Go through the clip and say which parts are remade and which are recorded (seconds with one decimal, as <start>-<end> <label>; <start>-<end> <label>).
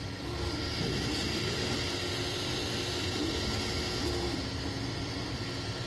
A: 0.0-5.9 recorded